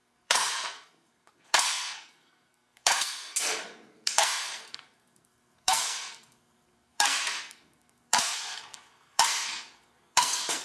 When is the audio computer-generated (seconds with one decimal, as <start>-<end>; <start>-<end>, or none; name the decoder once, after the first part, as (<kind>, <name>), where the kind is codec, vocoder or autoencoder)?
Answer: 0.0-10.6 (codec, SNAC)